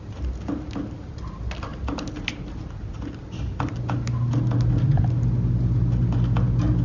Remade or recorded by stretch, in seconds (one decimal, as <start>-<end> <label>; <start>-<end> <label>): 0.0-6.8 recorded